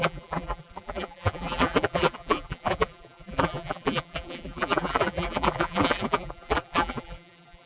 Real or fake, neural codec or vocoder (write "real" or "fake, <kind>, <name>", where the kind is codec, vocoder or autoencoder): fake, vocoder, BigVGAN v2